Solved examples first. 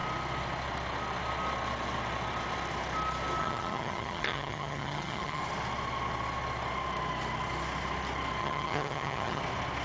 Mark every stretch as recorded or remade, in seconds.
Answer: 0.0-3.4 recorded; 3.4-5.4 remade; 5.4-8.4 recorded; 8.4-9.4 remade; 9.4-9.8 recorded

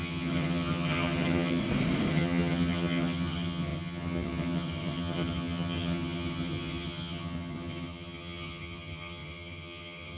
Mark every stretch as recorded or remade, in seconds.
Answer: 0.0-1.6 remade; 1.6-2.1 recorded; 2.1-10.2 remade